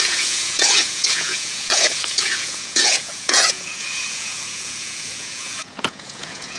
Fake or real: fake